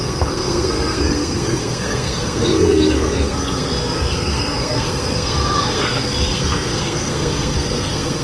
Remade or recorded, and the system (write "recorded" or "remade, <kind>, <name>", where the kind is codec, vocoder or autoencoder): remade, codec, SNAC